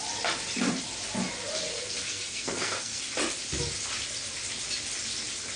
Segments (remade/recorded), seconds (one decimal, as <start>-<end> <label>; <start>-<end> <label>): 0.0-1.7 recorded; 1.7-3.0 remade; 3.0-5.6 recorded